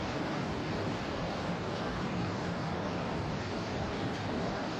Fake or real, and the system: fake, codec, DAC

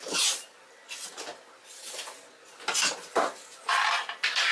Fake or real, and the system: real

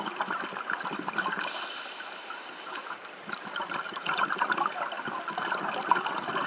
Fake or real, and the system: real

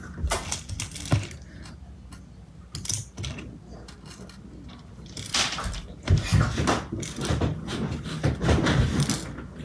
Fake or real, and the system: real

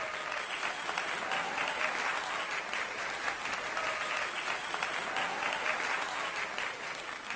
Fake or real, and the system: real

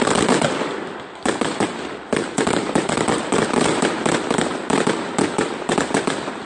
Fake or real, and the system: fake, vocoder, BigVGAN v2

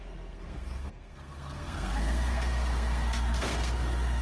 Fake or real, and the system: fake, codec, SNAC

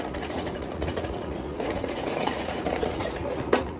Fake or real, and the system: fake, vocoder, Vocos